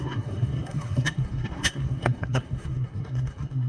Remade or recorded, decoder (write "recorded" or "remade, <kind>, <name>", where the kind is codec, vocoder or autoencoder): remade, codec, SNAC